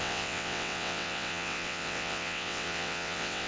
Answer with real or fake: fake